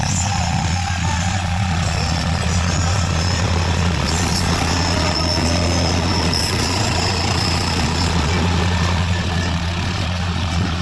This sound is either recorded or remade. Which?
remade